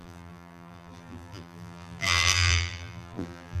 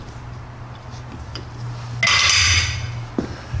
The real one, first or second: second